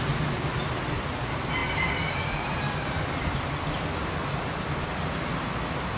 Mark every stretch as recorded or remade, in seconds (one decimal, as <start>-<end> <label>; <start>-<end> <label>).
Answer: 0.0-1.6 recorded; 1.6-5.2 remade; 5.2-6.0 recorded